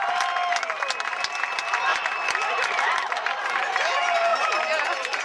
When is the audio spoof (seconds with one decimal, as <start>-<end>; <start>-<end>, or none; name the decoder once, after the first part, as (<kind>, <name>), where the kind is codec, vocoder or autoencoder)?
1.9-3.5 (vocoder, BigVGAN v2); 4.3-5.2